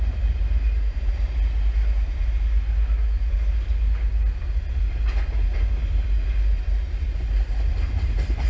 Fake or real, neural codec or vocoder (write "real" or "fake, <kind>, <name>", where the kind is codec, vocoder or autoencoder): real